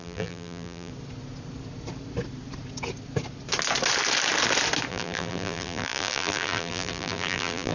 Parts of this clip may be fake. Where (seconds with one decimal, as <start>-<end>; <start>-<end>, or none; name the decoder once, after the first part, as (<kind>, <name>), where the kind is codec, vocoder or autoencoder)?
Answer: 0.0-0.9 (vocoder, BigVGAN v2); 4.9-7.7

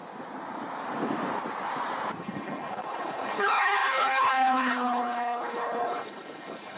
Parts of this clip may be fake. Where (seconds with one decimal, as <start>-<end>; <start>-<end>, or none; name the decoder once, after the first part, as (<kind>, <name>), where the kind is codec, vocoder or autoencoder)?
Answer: 2.2-6.8 (codec, HILCodec)

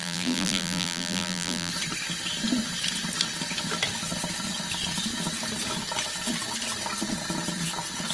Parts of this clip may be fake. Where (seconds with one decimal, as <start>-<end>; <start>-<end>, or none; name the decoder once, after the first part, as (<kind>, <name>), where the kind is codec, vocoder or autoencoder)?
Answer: 0.0-1.7 (vocoder, BigVGAN v2)

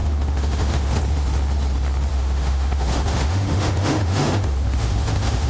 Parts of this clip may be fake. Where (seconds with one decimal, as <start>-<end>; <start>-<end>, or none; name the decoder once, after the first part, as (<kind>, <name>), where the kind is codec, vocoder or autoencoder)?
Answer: 0.0-1.0 (autoencoder, DAC-VAE); 2.1-5.5